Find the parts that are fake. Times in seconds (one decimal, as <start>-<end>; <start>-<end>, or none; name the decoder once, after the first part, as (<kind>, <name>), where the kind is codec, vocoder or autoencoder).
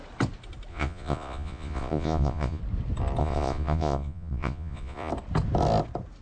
0.7-2.6 (vocoder, Vocos); 3.2-5.1